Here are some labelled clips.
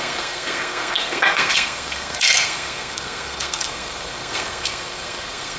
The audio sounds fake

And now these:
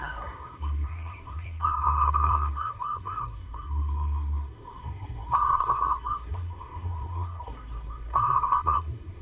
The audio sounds fake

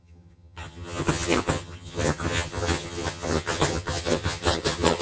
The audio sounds fake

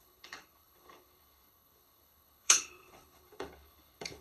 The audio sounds fake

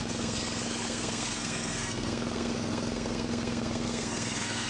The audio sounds fake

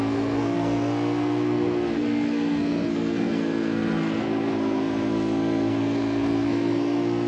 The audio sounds fake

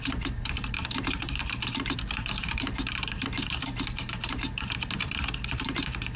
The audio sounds fake